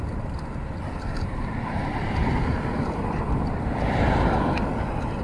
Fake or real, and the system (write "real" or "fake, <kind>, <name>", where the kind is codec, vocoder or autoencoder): fake, vocoder, BigVGAN v2